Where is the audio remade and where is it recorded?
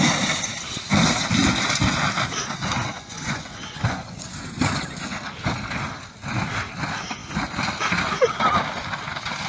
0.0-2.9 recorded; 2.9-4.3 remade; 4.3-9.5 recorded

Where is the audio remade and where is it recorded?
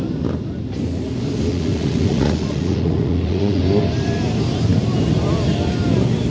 0.0-1.5 recorded; 1.5-3.6 remade; 3.6-6.3 recorded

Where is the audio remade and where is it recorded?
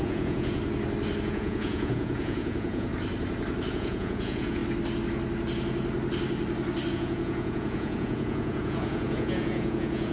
0.0-0.6 remade; 0.6-1.2 recorded; 1.2-2.9 remade; 2.9-3.7 recorded; 3.7-4.6 remade; 4.6-6.9 recorded; 6.9-10.1 remade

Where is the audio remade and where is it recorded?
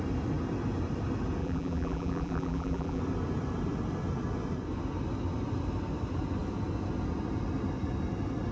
0.0-1.4 recorded; 1.4-3.0 remade; 3.0-8.5 recorded